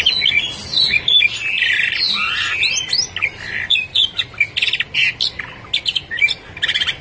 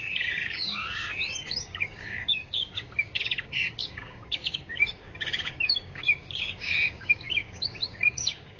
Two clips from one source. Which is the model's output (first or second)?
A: second